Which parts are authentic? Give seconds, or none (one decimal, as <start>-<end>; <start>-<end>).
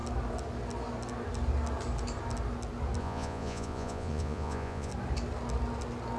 0.0-3.0; 4.9-6.2